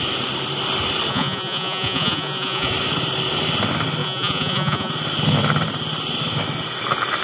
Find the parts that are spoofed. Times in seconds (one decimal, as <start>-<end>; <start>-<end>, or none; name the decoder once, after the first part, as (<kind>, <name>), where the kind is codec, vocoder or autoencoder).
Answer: 1.1-2.7 (vocoder, Vocos); 4.0-4.9